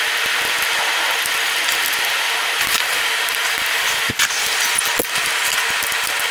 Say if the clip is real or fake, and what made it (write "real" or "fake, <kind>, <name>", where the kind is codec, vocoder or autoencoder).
real